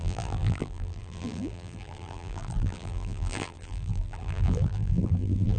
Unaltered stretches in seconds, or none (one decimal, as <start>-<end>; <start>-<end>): none